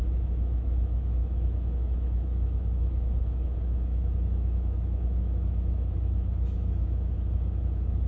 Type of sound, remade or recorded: remade